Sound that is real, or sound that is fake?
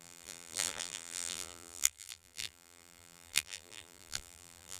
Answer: fake